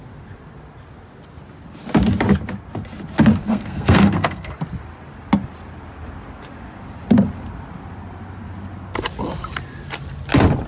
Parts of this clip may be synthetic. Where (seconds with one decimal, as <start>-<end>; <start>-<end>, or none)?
3.4-4.5

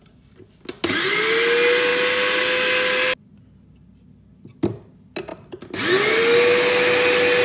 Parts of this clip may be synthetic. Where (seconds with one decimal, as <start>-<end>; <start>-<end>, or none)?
none

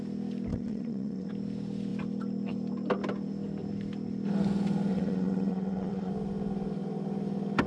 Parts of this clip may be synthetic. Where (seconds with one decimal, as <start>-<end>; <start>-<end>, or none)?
0.5-1.3; 4.9-6.1

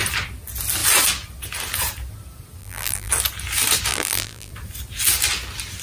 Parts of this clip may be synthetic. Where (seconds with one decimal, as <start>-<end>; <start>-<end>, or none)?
2.6-3.1; 3.9-4.5

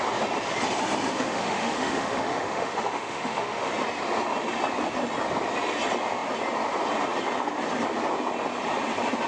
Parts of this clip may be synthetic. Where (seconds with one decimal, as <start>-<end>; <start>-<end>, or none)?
1.1-3.7

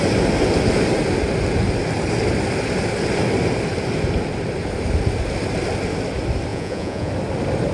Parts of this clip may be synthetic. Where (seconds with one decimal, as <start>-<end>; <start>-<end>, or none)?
6.5-7.1